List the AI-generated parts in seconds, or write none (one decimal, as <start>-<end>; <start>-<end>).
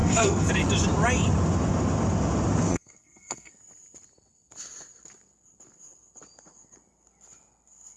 0.0-0.5; 2.7-3.5